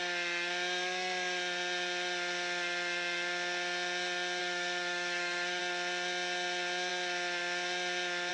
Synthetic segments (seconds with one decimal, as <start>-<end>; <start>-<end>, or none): 4.4-5.6